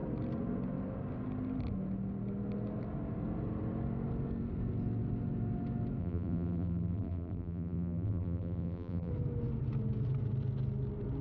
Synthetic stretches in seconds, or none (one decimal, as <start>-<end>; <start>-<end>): 6.0-9.1